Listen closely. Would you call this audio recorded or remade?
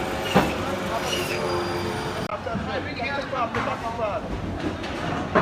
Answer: recorded